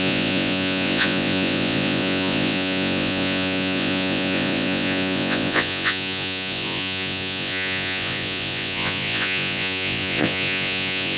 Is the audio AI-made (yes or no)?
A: yes